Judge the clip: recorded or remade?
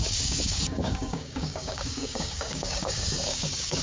remade